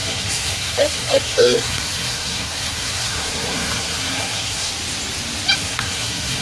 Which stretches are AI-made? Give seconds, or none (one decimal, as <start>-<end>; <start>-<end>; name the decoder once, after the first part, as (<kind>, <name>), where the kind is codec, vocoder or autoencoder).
0.0-4.7 (codec, SNAC); 5.6-6.4